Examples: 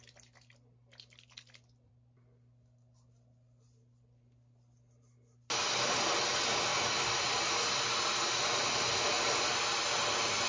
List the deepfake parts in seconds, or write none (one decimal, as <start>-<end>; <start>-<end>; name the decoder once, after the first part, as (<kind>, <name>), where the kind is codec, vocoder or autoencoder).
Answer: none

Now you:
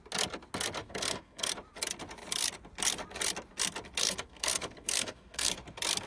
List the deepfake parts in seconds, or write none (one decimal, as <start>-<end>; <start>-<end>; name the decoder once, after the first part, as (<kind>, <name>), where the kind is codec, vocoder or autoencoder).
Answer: 0.8-1.5 (codec, SNAC); 4.0-5.5

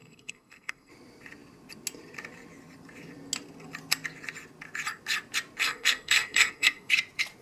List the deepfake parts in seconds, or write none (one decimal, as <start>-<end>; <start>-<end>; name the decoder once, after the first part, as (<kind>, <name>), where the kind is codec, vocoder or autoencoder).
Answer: 0.0-0.9 (codec, SNAC); 5.6-6.9

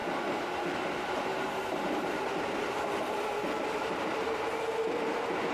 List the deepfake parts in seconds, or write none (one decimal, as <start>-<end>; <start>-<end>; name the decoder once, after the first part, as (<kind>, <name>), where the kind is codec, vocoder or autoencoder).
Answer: none

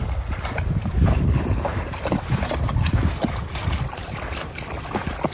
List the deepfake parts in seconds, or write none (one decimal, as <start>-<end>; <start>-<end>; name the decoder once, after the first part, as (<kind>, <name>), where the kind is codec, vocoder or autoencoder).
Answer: none

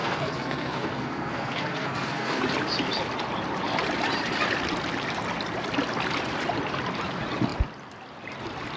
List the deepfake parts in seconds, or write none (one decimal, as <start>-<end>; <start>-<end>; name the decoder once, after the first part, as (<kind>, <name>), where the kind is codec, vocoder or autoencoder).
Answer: 0.0-2.4 (codec, SNAC)

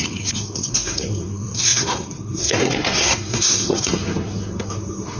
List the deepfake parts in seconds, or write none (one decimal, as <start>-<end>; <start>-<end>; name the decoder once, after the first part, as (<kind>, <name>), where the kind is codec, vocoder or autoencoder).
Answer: 0.0-5.2 (codec, SNAC)